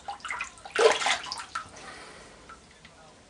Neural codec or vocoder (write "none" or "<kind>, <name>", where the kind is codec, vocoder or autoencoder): none